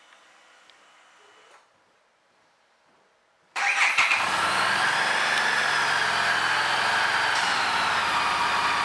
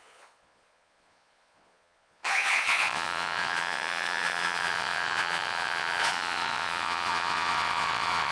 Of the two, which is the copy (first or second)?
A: second